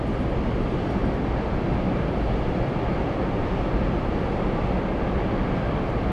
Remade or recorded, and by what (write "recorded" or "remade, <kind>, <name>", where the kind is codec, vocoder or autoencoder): recorded